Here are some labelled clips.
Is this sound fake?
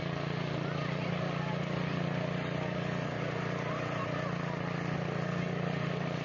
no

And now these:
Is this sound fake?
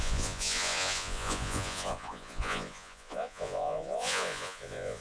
yes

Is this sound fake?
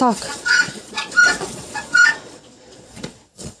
yes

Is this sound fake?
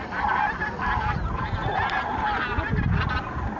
no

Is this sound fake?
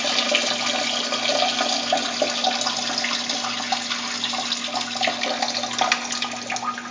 no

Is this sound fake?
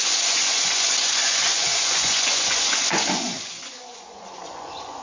yes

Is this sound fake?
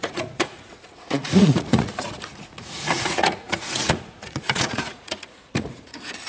yes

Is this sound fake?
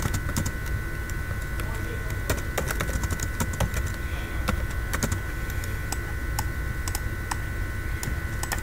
no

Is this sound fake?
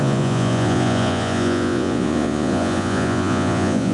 yes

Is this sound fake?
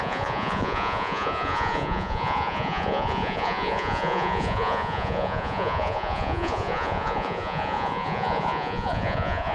yes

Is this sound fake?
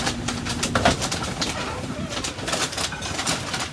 no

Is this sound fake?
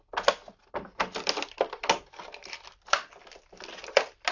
no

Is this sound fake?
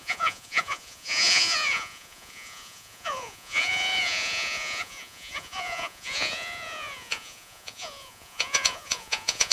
yes